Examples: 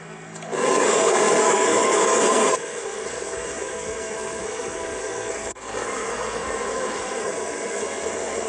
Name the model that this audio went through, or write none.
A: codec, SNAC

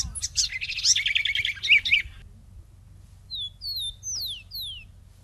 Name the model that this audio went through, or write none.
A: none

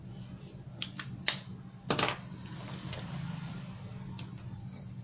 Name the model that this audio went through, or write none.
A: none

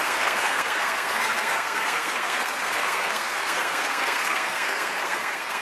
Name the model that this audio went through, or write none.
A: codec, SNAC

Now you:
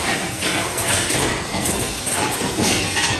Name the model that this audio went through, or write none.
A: codec, SNAC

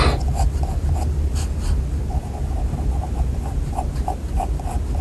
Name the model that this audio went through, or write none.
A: none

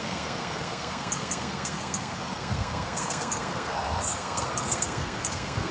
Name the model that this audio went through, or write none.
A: codec, SNAC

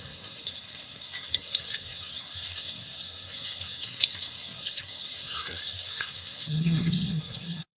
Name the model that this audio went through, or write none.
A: codec, SNAC